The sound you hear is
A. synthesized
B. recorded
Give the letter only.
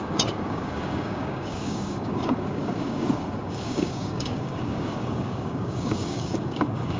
A